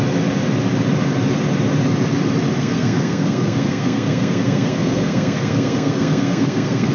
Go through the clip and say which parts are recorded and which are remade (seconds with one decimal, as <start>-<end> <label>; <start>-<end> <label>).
0.0-2.6 recorded; 2.6-6.9 remade